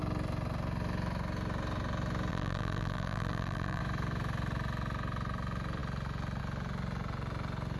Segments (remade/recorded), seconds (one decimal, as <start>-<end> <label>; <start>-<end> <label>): 0.0-2.3 recorded; 2.3-3.8 remade; 3.8-7.8 recorded